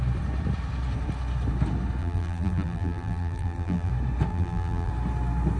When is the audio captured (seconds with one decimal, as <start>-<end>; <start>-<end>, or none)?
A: 0.0-2.0; 3.9-4.3; 4.9-5.6